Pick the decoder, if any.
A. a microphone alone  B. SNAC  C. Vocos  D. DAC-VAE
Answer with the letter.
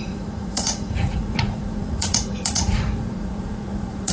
C